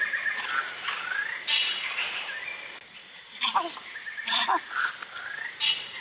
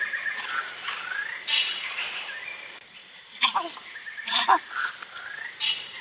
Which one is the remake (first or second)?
second